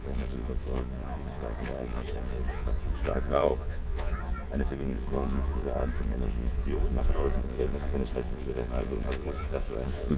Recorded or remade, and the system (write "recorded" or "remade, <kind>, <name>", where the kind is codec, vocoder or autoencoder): remade, vocoder, Vocos